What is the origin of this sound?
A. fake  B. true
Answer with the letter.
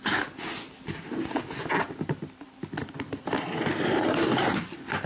B